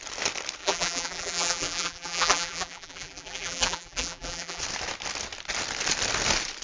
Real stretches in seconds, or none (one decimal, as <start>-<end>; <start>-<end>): 0.0-0.6; 4.6-6.6